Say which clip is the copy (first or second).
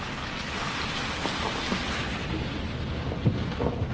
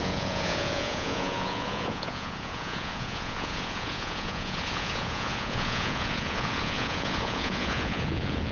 second